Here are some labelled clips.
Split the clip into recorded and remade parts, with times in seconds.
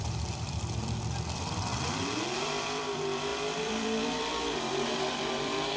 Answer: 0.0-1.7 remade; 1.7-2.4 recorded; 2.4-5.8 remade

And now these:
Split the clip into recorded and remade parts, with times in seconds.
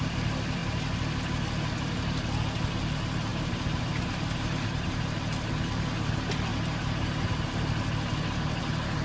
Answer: 0.0-3.3 recorded; 3.3-5.2 remade; 5.2-6.5 recorded; 6.5-7.3 remade; 7.3-9.0 recorded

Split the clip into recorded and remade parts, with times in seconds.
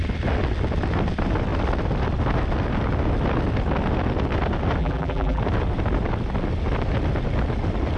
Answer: 0.0-4.8 recorded; 4.8-5.4 remade; 5.4-8.0 recorded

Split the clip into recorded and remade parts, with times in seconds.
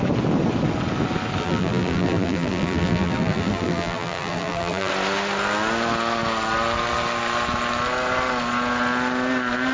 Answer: 0.0-1.4 recorded; 1.4-4.9 remade; 4.9-9.7 recorded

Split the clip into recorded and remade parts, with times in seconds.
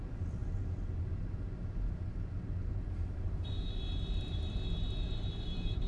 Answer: 0.0-2.7 recorded; 2.7-5.9 remade